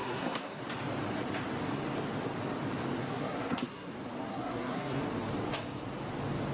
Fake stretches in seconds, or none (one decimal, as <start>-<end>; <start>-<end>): 0.0-0.6; 3.0-3.9; 4.3-5.0